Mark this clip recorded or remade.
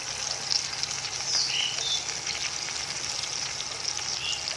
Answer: recorded